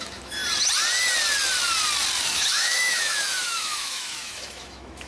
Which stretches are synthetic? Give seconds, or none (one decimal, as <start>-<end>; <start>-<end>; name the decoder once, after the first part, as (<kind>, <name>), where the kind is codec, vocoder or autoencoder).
0.0-0.4 (autoencoder, DAC-VAE); 2.2-5.1